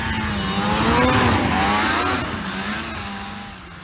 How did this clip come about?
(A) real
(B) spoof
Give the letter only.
A